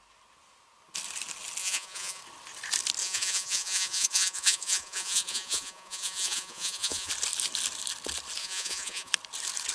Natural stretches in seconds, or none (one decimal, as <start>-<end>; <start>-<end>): 0.0-1.6; 2.2-3.0; 7.1-8.4; 9.1-9.7

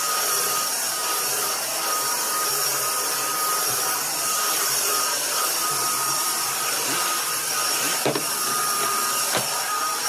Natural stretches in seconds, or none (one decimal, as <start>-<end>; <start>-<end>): none

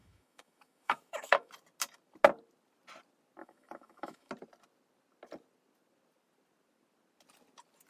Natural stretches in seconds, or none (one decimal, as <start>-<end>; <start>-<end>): 1.5-3.4; 4.3-7.9

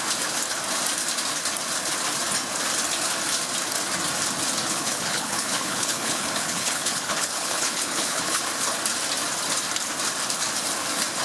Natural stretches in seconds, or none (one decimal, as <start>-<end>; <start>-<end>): 0.0-4.7; 8.4-11.2

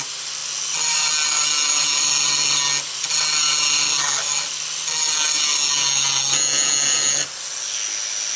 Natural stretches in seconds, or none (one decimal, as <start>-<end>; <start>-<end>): 0.0-8.4

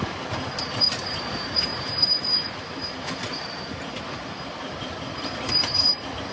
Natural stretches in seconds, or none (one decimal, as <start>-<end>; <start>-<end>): 0.0-6.3

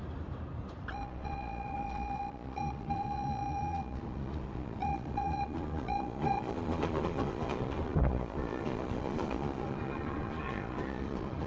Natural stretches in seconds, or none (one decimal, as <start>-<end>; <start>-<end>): 0.0-0.9